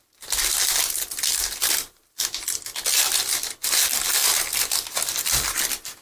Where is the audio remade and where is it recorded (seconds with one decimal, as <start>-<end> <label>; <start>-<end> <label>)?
0.0-6.0 recorded